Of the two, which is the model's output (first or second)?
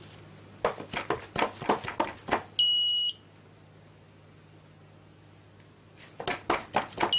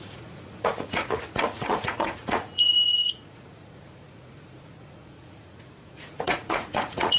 second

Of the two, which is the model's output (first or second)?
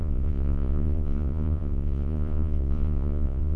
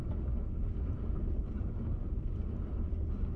first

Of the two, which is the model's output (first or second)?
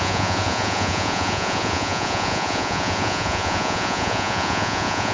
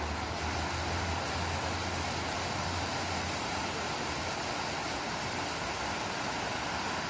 first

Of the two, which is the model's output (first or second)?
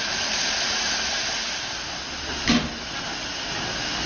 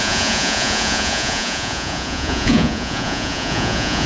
second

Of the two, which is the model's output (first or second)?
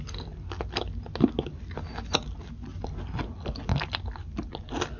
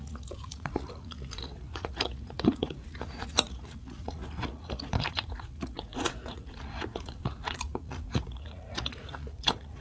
second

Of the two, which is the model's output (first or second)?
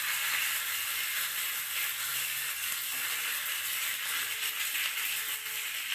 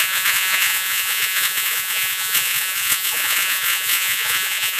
second